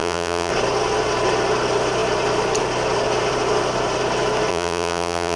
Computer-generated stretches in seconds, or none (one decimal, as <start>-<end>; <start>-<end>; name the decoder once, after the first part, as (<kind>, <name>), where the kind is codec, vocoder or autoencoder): 0.0-0.5 (vocoder, BigVGAN v2); 4.5-5.4